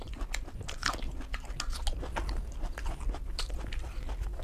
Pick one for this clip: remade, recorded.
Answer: recorded